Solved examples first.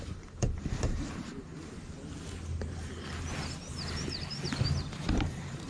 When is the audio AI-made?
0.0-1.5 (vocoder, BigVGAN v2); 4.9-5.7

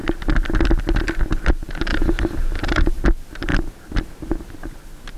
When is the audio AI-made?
1.9-3.0 (vocoder, BigVGAN v2)

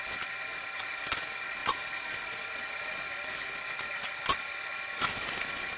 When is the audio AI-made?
none

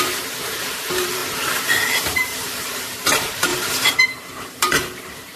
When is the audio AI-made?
0.0-1.2 (vocoder, BigVGAN v2); 1.8-3.5; 4.0-5.4